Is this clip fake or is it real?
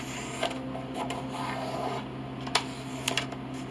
real